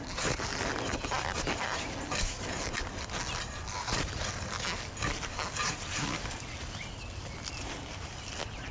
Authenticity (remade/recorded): recorded